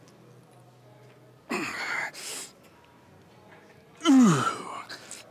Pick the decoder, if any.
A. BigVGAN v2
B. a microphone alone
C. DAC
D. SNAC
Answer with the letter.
B